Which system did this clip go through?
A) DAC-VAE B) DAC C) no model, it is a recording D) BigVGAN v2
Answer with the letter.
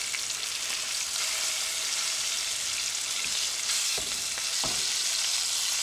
C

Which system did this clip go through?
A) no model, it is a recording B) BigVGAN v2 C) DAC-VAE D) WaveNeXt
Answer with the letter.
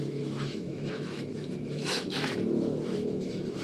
C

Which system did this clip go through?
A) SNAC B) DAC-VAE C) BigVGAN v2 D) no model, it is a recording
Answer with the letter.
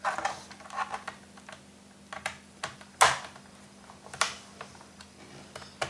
D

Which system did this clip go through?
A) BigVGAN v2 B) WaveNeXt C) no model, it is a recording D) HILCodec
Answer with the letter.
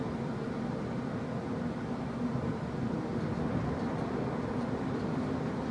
C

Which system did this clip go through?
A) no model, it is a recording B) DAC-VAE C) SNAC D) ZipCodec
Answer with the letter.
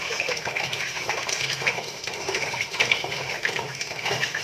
B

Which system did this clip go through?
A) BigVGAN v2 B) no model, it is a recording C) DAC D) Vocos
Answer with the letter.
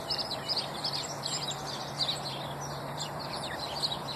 A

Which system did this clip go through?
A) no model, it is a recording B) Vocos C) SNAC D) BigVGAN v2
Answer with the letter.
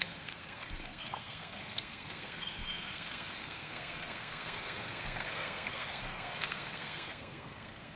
C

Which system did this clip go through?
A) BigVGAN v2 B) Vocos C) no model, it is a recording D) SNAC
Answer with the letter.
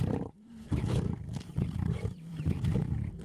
A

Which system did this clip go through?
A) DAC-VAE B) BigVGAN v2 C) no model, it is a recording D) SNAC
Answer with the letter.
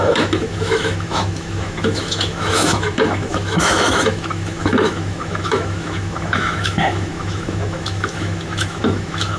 A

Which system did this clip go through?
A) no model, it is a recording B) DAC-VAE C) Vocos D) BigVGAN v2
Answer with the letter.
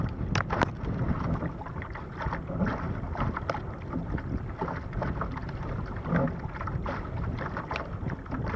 A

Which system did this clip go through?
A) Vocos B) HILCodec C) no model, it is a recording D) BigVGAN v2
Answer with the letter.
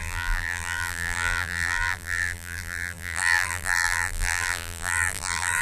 D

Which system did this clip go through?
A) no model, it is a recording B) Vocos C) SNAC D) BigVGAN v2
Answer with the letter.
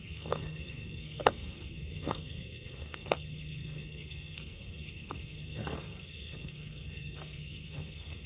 C